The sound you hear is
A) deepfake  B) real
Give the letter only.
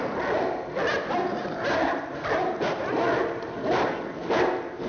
B